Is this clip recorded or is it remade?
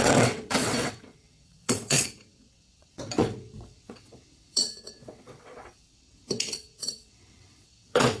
remade